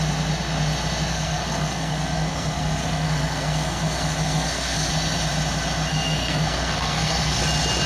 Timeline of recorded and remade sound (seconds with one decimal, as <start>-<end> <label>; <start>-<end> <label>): 0.0-1.1 recorded; 1.1-4.9 remade; 4.9-5.9 recorded; 5.9-7.4 remade; 7.4-7.9 recorded